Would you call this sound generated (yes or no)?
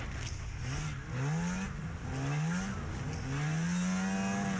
no